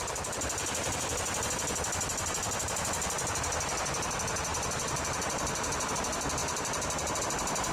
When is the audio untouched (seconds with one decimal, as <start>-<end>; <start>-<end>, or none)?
0.0-0.8; 1.5-4.5; 5.9-7.7

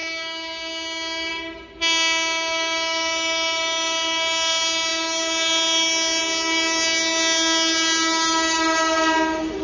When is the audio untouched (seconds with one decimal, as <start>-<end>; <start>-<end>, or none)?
0.0-9.6

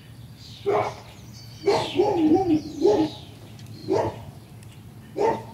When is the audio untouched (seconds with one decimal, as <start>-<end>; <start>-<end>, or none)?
0.0-3.8; 5.0-5.5

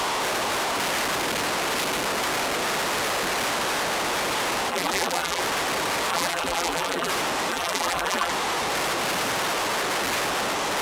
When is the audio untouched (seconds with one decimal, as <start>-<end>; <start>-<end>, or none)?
0.0-4.7; 5.4-6.1; 7.1-7.5; 8.3-10.8

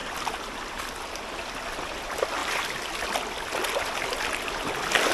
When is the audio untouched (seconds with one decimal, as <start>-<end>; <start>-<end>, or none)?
0.7-5.1

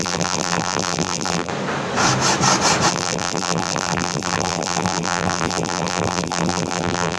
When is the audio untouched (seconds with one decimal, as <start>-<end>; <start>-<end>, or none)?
1.5-2.9

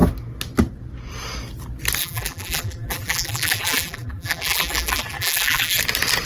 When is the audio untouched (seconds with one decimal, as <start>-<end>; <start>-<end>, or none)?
0.0-2.0; 5.8-6.3

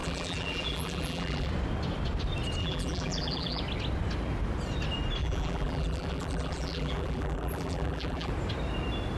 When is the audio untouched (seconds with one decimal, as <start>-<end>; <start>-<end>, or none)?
1.5-2.6; 3.6-5.2; 8.3-9.2